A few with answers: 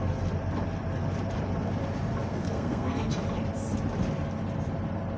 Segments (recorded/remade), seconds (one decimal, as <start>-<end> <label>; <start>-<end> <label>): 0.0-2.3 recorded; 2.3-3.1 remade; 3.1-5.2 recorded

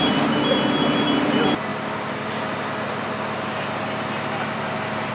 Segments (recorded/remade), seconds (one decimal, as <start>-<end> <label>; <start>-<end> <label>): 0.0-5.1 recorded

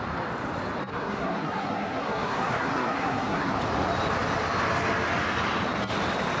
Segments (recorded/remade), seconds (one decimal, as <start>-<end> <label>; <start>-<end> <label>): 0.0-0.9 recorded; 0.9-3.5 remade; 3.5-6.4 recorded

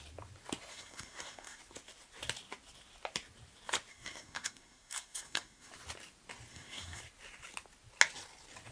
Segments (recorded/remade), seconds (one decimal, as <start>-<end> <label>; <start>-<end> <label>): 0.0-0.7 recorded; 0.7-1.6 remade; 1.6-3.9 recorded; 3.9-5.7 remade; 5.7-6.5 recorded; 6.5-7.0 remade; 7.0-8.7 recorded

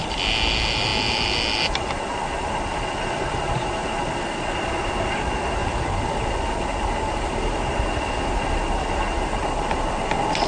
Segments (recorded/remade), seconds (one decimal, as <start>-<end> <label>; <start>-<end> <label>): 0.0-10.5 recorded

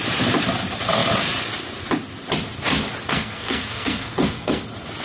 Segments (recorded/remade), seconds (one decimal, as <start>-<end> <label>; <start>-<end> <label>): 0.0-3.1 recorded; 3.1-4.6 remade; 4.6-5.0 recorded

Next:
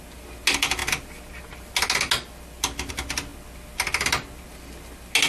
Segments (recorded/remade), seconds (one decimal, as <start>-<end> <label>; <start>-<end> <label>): 0.0-5.3 recorded

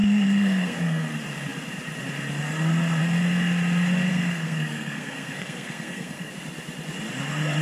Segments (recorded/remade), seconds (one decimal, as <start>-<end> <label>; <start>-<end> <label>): 0.0-1.1 remade; 1.1-4.1 recorded; 4.1-6.3 remade; 6.3-7.6 recorded